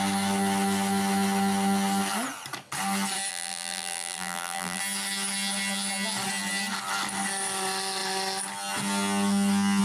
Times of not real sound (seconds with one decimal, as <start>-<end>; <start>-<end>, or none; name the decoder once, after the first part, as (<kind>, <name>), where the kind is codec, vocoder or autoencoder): 3.3-4.8 (vocoder, BigVGAN v2)